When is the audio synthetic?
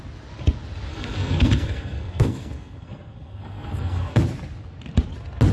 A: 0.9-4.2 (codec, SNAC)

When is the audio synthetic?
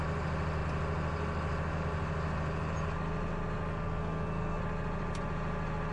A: 3.7-4.6 (codec, SNAC)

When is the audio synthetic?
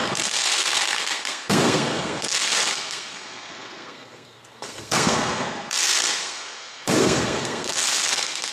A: 0.0-8.5 (codec, SNAC)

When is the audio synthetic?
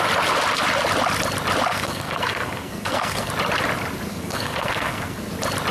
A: 1.7-3.3 (codec, SNAC); 4.1-5.3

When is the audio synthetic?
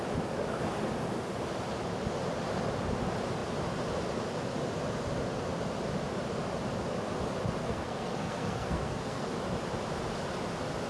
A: 7.6-9.3 (codec, SNAC)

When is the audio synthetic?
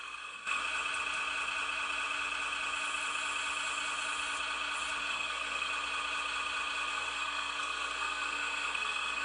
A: 0.0-0.6 (codec, SNAC); 5.0-5.7; 6.9-9.2